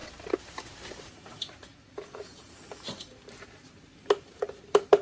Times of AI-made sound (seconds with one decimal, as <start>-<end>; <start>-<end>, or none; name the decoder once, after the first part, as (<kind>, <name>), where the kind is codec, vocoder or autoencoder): 1.7-2.5 (vocoder, Vocos)